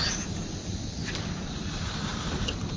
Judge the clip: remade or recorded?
recorded